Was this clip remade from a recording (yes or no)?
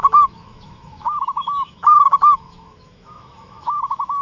yes